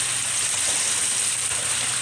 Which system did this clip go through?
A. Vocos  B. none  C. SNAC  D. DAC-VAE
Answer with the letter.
B